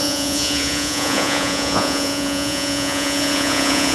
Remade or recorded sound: remade